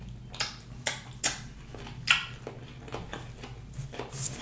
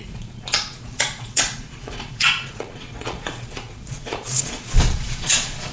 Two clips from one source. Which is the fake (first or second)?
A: second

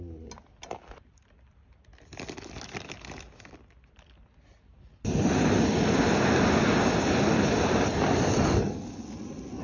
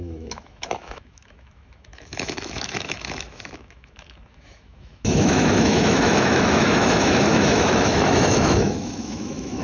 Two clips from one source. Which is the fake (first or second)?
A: second